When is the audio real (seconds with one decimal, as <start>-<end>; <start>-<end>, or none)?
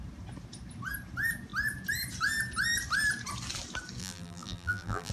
0.0-4.0